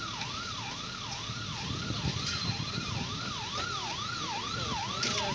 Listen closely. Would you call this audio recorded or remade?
recorded